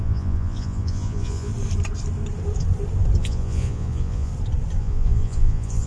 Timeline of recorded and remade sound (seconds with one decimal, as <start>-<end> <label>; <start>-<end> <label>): 0.0-1.5 remade; 1.5-3.2 recorded; 3.2-4.3 remade; 4.3-4.8 recorded; 4.8-5.9 remade

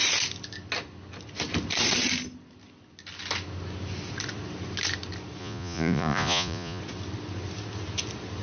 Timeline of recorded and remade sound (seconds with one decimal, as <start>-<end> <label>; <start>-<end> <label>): 0.0-5.4 recorded; 5.4-6.8 remade; 6.8-8.4 recorded